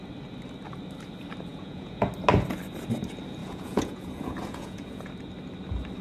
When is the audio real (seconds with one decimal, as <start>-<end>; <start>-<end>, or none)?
0.0-1.5; 2.1-3.4; 5.1-6.0